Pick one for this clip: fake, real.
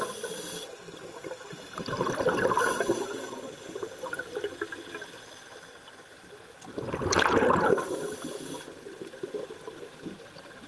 real